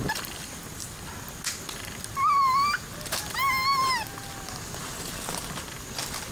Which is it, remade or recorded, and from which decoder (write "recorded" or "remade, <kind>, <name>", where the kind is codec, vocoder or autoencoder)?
recorded